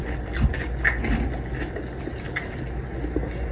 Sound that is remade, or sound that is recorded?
recorded